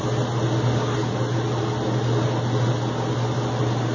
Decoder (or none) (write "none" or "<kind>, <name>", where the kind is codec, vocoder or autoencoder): none